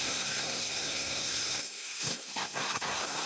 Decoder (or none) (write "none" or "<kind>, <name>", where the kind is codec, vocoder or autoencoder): codec, SNAC